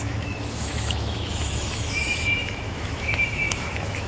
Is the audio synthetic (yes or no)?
yes